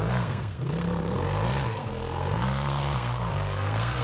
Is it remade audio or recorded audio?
remade